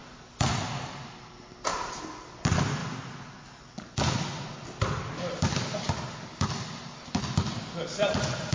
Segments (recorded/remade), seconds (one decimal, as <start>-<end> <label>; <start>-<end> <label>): 0.0-2.3 remade; 2.3-8.5 recorded